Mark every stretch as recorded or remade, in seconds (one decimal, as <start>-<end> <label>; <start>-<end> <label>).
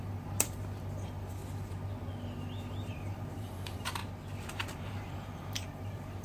0.0-1.4 remade; 1.4-2.8 recorded; 2.8-4.0 remade; 4.0-4.5 recorded; 4.5-6.2 remade